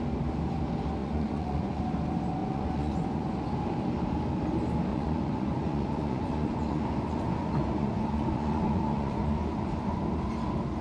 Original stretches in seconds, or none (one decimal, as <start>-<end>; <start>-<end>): 0.0-1.0; 1.8-2.4; 3.3-4.9; 10.0-10.8